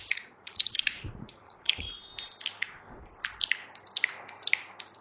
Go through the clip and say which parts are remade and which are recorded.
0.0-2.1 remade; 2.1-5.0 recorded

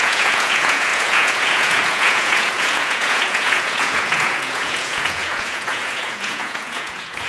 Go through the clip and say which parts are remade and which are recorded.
0.0-7.3 remade

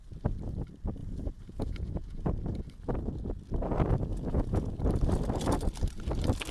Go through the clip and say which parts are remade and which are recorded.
0.0-1.0 recorded; 1.0-2.6 remade; 2.6-4.1 recorded; 4.1-4.7 remade; 4.7-6.5 recorded

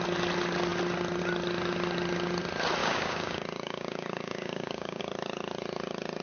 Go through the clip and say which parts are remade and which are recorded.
0.0-2.8 recorded; 2.8-5.0 remade; 5.0-6.2 recorded

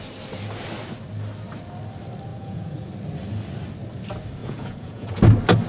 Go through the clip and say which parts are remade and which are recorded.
0.0-2.3 recorded; 2.3-2.9 remade; 2.9-4.4 recorded; 4.4-5.2 remade; 5.2-5.7 recorded